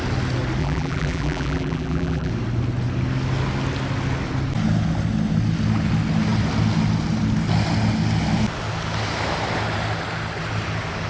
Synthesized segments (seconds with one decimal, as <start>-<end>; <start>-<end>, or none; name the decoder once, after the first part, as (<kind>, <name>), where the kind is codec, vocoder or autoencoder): 0.6-2.3 (vocoder, BigVGAN v2)

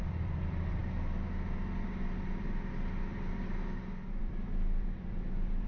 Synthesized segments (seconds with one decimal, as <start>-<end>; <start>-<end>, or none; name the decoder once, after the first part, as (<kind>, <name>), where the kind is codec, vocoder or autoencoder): 0.0-0.8 (vocoder, BigVGAN v2); 4.2-5.7

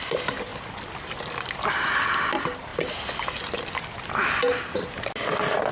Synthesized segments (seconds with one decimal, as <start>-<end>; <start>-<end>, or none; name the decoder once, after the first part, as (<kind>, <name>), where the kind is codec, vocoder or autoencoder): none

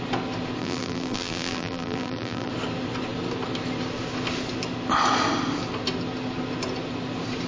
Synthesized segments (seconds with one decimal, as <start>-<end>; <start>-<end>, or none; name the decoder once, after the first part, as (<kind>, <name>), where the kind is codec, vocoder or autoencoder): 0.6-2.5 (vocoder, BigVGAN v2)

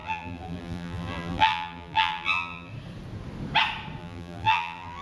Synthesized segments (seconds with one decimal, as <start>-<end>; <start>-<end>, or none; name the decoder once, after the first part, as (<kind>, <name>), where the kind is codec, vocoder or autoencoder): 0.0-2.7 (vocoder, BigVGAN v2); 4.0-5.0